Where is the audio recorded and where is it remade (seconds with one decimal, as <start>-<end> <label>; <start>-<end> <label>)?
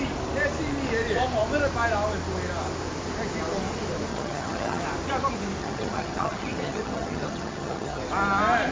0.0-4.1 recorded; 4.1-4.8 remade; 4.8-5.6 recorded; 5.6-8.0 remade; 8.0-8.7 recorded